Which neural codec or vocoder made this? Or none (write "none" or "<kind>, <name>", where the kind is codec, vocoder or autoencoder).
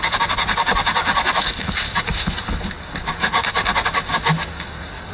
none